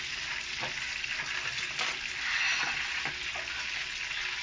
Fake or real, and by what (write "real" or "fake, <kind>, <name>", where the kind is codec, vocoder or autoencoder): real